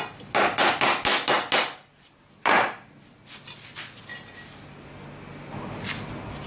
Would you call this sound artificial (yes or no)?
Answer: no